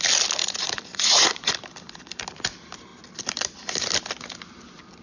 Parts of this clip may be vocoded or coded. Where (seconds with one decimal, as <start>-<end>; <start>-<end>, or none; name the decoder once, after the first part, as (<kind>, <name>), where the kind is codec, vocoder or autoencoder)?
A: 0.4-1.5 (vocoder, Vocos)